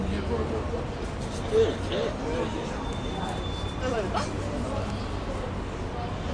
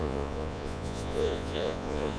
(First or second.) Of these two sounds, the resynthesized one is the second